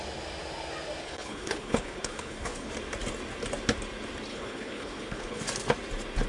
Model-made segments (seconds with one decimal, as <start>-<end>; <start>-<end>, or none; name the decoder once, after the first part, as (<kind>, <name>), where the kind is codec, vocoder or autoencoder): 1.0-2.7 (codec, HILCodec); 4.3-5.4

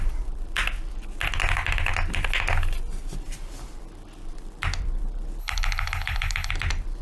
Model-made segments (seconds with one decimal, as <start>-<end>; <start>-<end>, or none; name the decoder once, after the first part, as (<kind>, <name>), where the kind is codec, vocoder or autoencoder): 5.4-6.5 (codec, HILCodec)

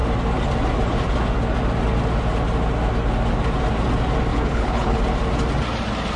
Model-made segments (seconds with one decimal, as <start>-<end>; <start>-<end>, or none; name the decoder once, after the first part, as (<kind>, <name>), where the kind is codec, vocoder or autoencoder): 4.3-5.0 (codec, HILCodec)